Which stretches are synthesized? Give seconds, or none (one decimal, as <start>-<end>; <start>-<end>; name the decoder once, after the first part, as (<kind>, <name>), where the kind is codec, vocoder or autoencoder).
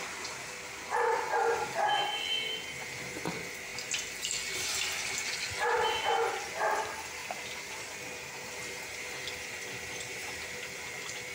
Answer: 7.2-9.3 (vocoder, BigVGAN v2); 10.2-11.3